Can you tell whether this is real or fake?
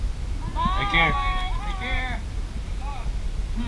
real